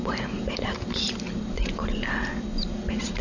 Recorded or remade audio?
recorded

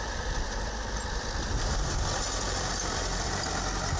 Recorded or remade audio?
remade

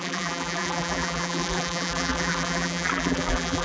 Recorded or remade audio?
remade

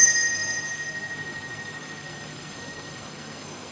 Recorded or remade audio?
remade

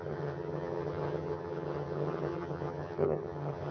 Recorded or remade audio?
remade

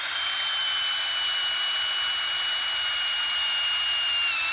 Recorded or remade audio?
recorded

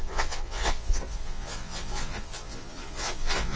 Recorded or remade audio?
remade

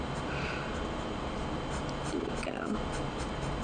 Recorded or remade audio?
recorded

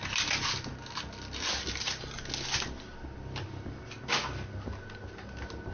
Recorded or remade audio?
recorded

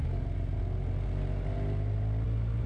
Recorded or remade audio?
recorded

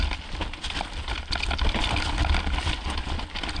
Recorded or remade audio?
recorded